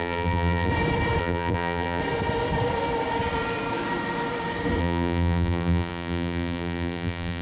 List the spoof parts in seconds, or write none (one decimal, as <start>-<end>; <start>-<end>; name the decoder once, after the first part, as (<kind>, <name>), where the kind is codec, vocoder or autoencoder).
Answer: 0.0-0.7 (vocoder, BigVGAN v2); 1.2-2.0; 4.8-7.4